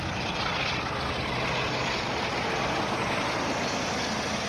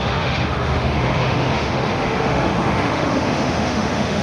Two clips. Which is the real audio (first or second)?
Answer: first